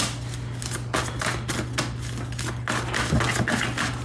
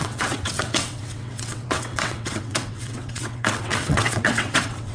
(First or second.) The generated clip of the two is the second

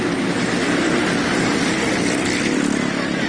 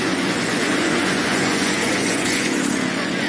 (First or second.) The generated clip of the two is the second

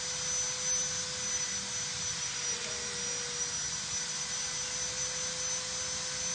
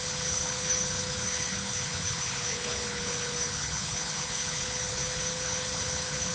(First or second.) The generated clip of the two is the second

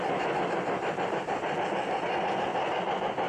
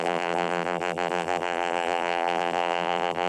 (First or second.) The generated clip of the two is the second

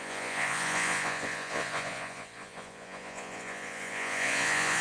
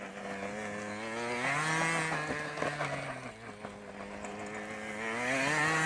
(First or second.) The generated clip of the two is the first